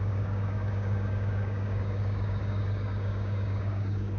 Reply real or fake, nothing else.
fake